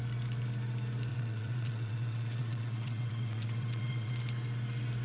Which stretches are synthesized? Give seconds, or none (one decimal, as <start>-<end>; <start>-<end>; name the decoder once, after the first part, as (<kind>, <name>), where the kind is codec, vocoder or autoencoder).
1.1-4.1 (vocoder, WaveNeXt)